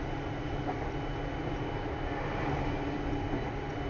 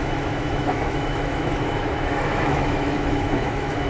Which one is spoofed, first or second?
second